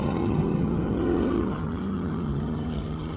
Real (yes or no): no